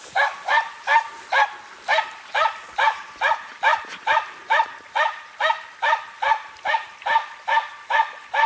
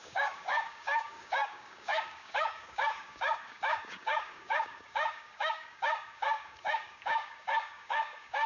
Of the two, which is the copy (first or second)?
second